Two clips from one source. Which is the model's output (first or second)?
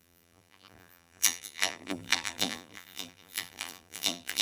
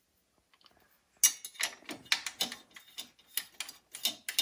first